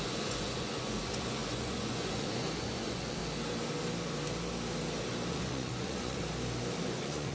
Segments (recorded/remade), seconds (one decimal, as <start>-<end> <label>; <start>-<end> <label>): 0.0-3.2 remade; 3.2-5.3 recorded; 5.3-6.2 remade; 6.2-6.8 recorded; 6.8-7.3 remade